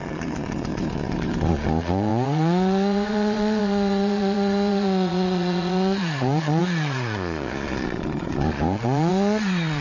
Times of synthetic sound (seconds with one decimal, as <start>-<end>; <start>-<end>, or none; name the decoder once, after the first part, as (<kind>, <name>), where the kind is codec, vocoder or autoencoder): 0.0-9.8 (vocoder, Vocos)